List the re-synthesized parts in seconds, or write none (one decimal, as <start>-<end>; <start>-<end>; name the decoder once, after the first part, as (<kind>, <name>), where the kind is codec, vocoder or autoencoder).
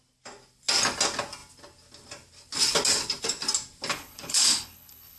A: 3.9-5.2 (codec, HILCodec)